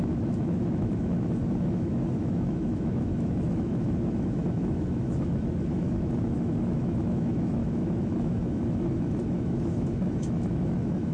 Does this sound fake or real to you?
fake